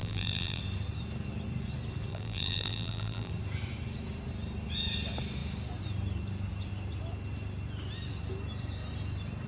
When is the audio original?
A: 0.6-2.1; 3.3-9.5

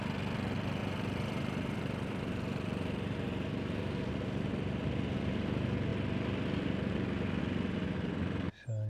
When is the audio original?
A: 0.0-0.8; 4.5-8.9

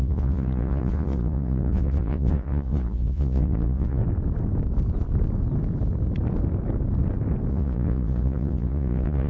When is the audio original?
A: 4.0-7.5

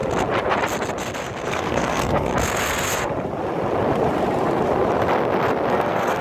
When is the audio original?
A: 0.0-1.5; 2.3-5.7

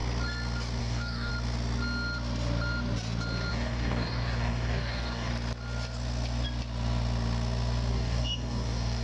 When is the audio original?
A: 0.0-0.8; 1.3-3.5; 5.3-7.9